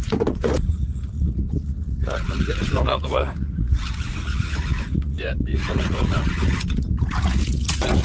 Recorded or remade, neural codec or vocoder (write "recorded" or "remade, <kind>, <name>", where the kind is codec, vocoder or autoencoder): remade, vocoder, Vocos